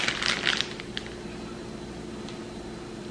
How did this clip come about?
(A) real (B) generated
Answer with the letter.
A